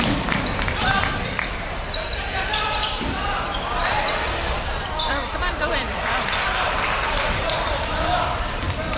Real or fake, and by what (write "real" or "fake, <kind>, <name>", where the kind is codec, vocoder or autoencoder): fake, vocoder, BigVGAN v2